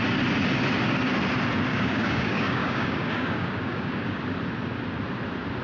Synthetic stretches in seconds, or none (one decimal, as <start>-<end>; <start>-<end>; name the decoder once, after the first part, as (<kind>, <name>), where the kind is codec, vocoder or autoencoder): 1.7-4.2 (codec, DAC)